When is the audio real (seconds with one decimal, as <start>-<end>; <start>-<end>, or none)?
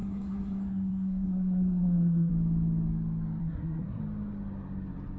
2.3-3.4; 4.0-5.2